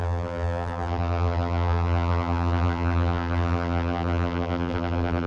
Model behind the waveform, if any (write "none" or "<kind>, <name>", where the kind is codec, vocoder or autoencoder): vocoder, BigVGAN v2